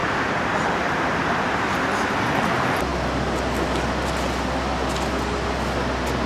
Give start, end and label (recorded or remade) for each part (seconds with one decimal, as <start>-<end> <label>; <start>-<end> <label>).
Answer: 0.0-1.3 remade; 1.3-6.3 recorded